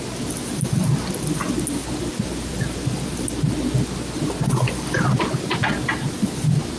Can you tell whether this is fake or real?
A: real